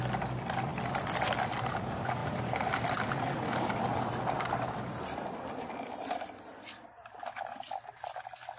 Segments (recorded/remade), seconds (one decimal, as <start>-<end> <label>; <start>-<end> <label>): 0.0-8.6 remade